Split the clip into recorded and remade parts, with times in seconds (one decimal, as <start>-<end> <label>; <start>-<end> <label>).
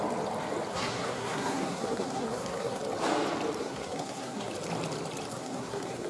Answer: 0.0-0.7 recorded; 0.7-2.8 remade; 2.8-3.6 recorded; 3.6-4.5 remade; 4.5-5.3 recorded; 5.3-6.1 remade